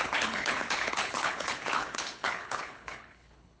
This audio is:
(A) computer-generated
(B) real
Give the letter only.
A